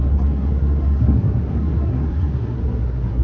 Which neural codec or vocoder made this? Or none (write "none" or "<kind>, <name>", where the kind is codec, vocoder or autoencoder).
codec, SNAC